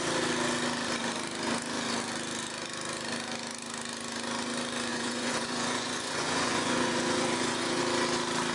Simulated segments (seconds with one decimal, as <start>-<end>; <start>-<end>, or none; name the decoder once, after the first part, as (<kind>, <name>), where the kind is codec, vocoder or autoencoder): 4.9-7.8 (vocoder, Vocos)